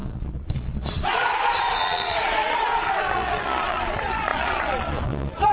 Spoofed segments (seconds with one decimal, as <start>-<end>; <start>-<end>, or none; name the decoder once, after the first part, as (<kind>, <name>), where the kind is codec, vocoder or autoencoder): 0.0-5.5 (vocoder, Vocos)